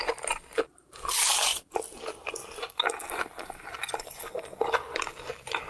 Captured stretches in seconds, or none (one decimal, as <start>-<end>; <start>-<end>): 0.0-5.7